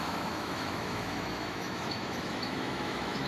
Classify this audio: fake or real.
fake